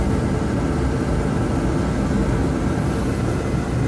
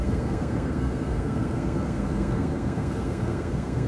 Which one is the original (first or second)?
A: first